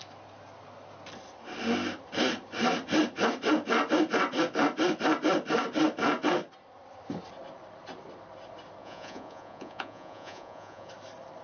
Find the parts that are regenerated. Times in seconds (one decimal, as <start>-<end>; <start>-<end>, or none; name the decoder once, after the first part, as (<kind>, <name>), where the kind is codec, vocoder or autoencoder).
8.8-10.9 (vocoder, Vocos)